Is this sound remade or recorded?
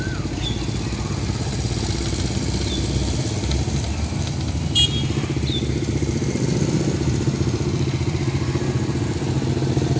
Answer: recorded